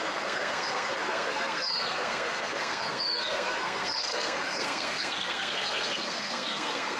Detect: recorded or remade remade